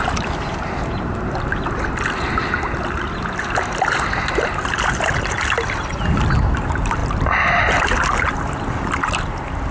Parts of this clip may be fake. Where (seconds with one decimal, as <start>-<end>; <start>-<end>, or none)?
none